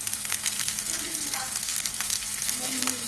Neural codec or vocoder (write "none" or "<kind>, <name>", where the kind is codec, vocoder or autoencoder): codec, SNAC